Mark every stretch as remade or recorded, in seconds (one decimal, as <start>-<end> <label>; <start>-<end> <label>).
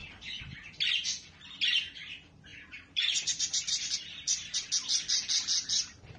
0.0-2.5 recorded; 2.5-4.7 remade; 4.7-6.2 recorded